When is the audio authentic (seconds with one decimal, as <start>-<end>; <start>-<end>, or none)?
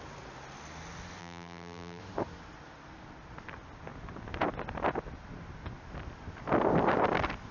0.0-1.2; 2.0-7.5